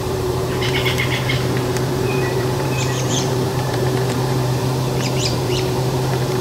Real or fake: fake